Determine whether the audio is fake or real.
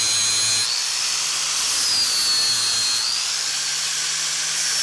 real